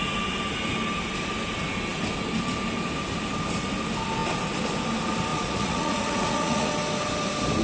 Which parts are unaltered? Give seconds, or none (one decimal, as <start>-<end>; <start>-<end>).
0.0-5.3; 6.7-7.6